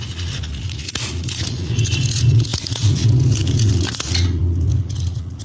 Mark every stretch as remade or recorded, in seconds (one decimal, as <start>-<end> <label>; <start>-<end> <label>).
0.0-5.4 remade

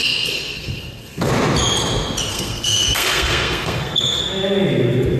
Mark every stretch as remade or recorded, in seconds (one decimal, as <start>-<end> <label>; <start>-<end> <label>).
0.0-1.3 remade; 1.3-2.3 recorded; 2.3-4.2 remade; 4.2-5.2 recorded

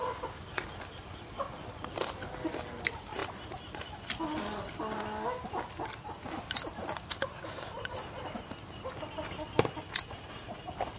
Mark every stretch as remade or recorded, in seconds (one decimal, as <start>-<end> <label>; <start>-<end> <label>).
0.0-11.0 recorded

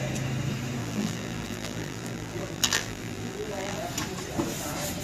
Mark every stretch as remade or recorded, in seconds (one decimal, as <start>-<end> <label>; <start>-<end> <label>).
0.0-0.8 recorded; 0.8-3.8 remade; 3.8-5.0 recorded

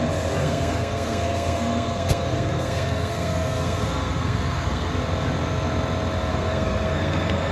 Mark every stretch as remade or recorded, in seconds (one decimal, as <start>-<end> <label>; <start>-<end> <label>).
0.0-0.4 recorded; 0.4-4.9 remade; 4.9-6.3 recorded; 6.3-7.5 remade

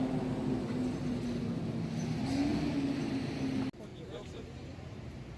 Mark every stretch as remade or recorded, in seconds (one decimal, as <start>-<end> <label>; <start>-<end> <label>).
0.0-3.9 recorded; 3.9-5.4 remade

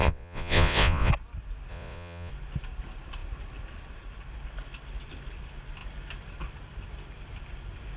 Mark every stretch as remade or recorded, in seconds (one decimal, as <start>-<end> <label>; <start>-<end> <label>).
0.0-1.1 remade; 1.1-1.7 recorded; 1.7-2.3 remade; 2.3-8.0 recorded

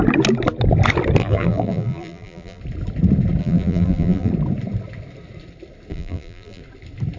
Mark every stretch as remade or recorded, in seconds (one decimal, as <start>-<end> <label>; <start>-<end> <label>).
0.0-1.2 recorded; 1.2-2.6 remade; 2.6-3.4 recorded; 3.4-4.3 remade; 4.3-5.9 recorded; 5.9-6.6 remade; 6.6-7.2 recorded